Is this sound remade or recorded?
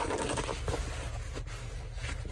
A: recorded